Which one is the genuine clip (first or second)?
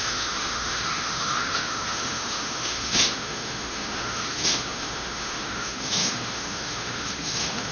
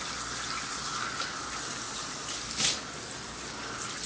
second